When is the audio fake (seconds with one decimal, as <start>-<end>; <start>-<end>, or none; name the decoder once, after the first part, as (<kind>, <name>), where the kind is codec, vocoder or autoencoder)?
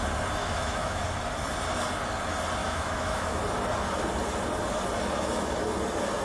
0.4-1.0 (autoencoder, DAC-VAE); 2.6-3.4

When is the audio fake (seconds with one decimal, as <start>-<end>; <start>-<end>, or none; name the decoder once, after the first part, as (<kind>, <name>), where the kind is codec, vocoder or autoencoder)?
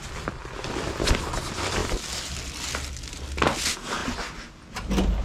none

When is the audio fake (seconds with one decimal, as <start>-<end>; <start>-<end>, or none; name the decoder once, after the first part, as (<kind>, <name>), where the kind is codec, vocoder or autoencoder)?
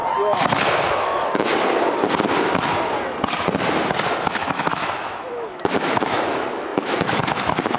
0.9-1.5 (autoencoder, DAC-VAE); 4.3-7.8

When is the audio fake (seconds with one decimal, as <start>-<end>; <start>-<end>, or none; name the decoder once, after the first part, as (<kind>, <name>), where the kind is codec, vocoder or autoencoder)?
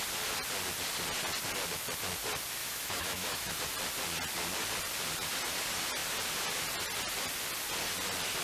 2.6-3.5 (autoencoder, DAC-VAE)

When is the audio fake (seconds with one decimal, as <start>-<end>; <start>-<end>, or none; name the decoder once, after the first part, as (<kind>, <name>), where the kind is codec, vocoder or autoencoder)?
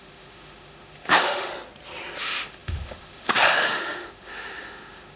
0.0-1.5 (autoencoder, DAC-VAE); 2.2-5.2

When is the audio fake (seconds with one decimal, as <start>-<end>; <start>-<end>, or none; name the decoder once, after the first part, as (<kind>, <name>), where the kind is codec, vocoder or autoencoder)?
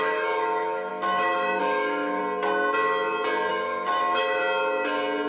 0.0-2.2 (autoencoder, DAC-VAE); 3.5-4.4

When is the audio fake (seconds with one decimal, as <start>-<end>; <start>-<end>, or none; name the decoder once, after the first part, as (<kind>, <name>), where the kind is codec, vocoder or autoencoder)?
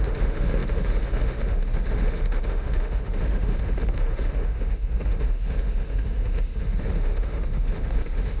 0.0-8.4 (autoencoder, DAC-VAE)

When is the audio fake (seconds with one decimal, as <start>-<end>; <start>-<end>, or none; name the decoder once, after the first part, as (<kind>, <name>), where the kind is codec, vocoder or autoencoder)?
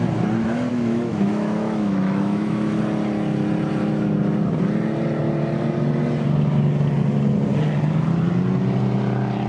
0.7-2.8 (autoencoder, DAC-VAE)